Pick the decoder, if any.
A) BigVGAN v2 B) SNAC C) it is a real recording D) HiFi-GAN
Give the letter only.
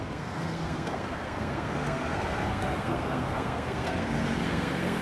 B